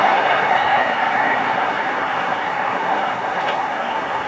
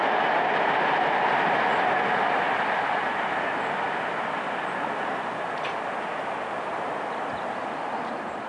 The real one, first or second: second